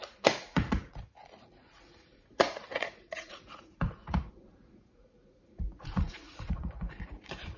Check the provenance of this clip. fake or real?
fake